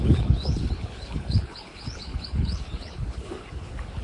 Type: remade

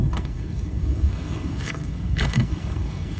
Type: remade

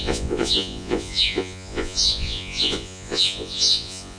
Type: remade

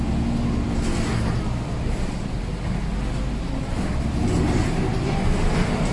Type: recorded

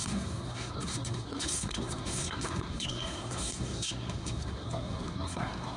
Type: remade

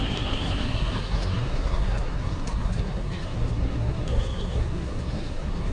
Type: remade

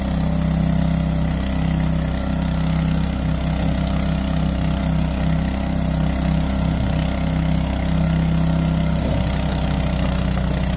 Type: recorded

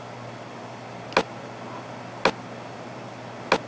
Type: recorded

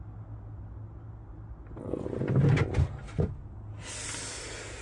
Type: recorded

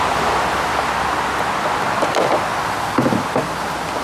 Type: recorded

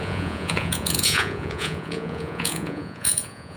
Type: remade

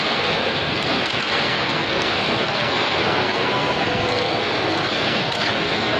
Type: remade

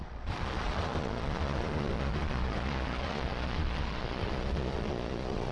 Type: remade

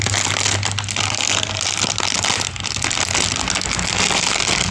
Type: recorded